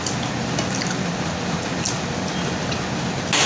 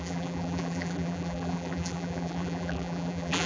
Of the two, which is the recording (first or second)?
first